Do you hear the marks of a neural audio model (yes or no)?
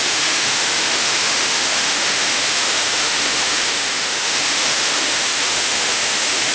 yes